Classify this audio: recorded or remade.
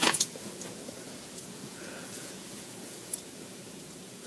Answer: remade